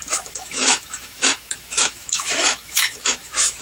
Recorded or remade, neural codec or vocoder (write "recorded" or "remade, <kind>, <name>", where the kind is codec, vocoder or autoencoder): remade, autoencoder, DAC-VAE